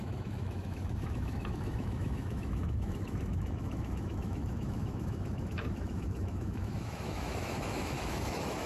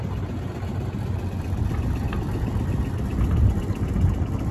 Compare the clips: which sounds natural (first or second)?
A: second